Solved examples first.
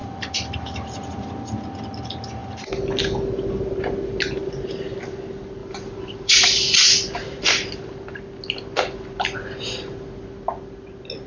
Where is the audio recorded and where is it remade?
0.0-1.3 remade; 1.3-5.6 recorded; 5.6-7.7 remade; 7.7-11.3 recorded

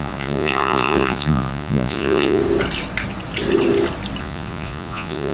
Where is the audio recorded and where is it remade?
0.0-2.4 remade; 2.4-4.2 recorded; 4.2-5.3 remade

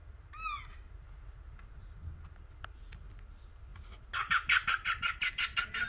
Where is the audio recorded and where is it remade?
0.0-5.9 recorded